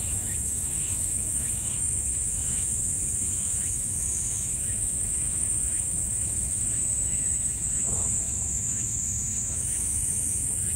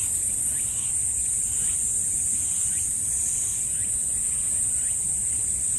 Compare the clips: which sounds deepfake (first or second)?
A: first